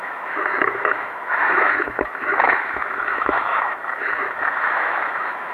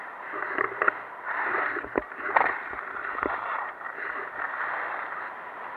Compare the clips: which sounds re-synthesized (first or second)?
first